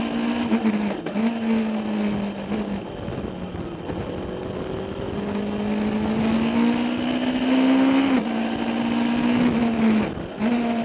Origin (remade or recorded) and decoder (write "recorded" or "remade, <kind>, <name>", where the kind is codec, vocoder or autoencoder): recorded